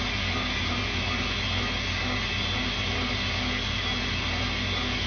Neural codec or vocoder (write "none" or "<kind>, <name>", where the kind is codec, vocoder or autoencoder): none